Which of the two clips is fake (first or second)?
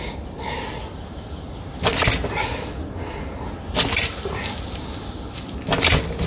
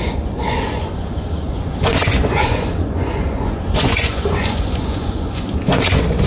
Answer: second